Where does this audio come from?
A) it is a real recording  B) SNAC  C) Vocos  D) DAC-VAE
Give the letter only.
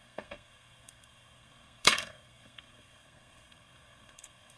B